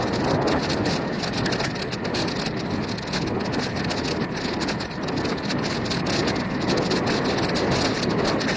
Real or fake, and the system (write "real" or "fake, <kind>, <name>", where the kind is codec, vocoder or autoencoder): real